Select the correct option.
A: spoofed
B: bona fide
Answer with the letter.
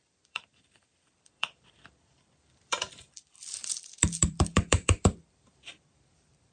A